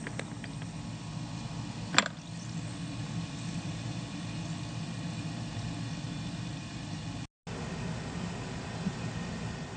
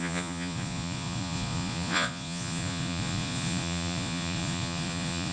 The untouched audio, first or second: first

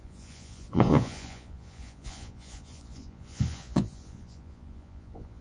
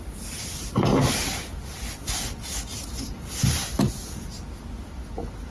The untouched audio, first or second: second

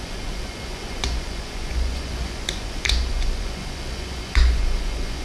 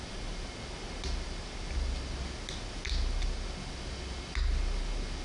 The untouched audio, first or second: second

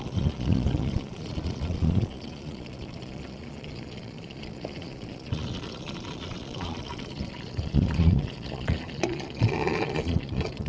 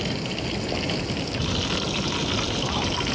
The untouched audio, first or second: second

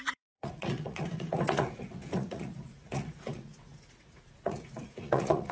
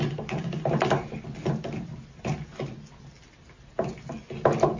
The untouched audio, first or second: second